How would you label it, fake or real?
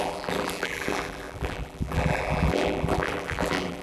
fake